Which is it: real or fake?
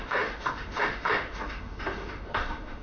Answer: fake